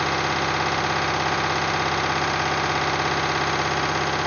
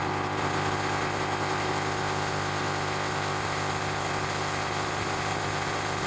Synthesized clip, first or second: second